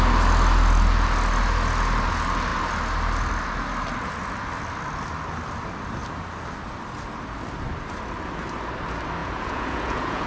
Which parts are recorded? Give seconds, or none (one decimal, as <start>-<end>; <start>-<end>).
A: 0.0-9.2